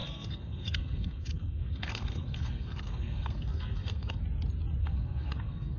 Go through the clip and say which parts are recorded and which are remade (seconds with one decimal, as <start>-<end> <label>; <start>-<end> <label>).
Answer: 0.0-4.2 remade; 4.2-4.8 recorded; 4.8-5.8 remade

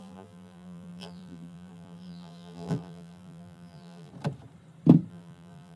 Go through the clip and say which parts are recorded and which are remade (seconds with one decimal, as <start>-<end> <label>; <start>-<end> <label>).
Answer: 0.0-4.1 remade; 4.1-5.1 recorded; 5.1-5.8 remade

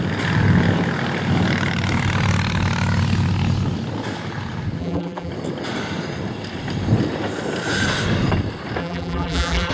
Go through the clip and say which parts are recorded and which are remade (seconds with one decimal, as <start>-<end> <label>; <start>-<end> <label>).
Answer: 0.0-4.8 recorded; 4.8-5.3 remade; 5.3-8.8 recorded; 8.8-9.7 remade

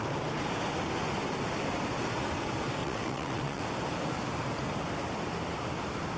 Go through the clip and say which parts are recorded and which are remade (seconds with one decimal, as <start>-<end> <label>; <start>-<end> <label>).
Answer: 0.0-2.8 recorded; 2.8-3.6 remade; 3.6-6.2 recorded